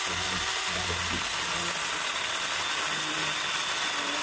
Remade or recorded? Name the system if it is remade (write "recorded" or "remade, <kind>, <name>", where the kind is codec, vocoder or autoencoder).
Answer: recorded